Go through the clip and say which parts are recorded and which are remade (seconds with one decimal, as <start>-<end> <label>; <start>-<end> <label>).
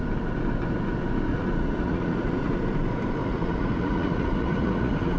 0.0-1.3 recorded; 1.3-2.6 remade; 2.6-3.2 recorded; 3.2-5.2 remade